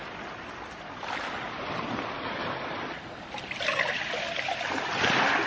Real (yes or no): yes